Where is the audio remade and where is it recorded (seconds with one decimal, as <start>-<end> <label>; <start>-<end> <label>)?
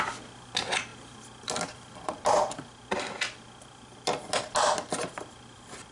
0.0-5.9 recorded